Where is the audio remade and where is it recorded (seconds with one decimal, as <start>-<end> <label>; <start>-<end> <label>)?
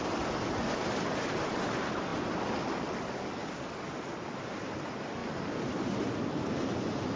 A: 0.0-7.2 recorded